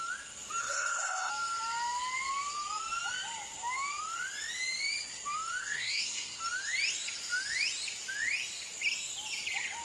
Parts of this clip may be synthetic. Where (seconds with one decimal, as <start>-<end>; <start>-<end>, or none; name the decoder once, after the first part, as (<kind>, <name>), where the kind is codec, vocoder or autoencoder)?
0.6-1.3 (codec, SNAC); 5.6-6.4

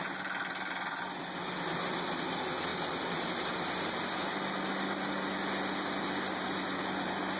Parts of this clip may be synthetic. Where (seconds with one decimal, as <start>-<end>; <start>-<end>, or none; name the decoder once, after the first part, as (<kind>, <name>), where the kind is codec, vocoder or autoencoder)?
none

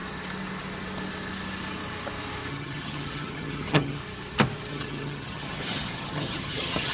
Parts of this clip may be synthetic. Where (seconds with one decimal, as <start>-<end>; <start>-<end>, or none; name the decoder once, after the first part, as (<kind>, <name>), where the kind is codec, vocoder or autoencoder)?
2.5-4.0 (vocoder, HiFi-GAN); 4.7-6.9

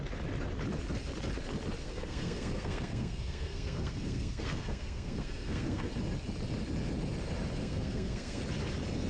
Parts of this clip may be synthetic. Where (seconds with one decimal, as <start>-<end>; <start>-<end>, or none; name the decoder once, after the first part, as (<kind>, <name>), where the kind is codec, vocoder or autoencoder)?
1.8-5.9 (codec, SNAC); 7.6-8.4

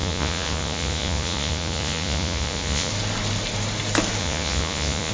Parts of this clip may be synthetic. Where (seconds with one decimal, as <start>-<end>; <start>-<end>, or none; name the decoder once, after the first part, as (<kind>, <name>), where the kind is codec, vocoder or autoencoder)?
0.0-2.9 (vocoder, Vocos); 4.2-5.1

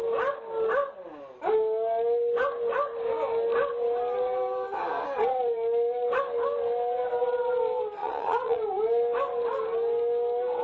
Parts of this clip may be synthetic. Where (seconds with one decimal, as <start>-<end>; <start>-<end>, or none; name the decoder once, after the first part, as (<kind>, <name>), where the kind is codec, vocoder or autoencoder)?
8.0-8.6 (vocoder, Vocos)